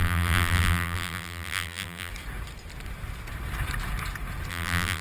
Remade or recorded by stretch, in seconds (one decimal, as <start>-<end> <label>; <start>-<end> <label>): 0.0-2.1 remade; 2.1-4.5 recorded; 4.5-5.0 remade